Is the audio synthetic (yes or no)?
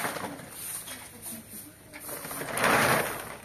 no